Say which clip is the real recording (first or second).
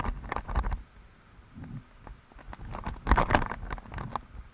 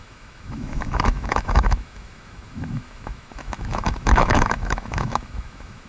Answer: first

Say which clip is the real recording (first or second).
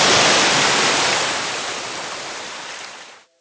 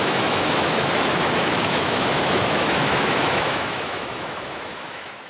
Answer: first